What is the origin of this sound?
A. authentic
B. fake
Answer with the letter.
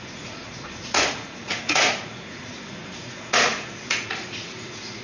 B